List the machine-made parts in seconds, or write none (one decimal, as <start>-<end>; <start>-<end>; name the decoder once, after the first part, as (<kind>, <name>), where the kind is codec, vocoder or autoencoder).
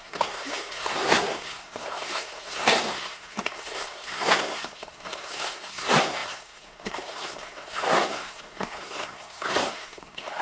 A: 0.0-10.4 (codec, SNAC)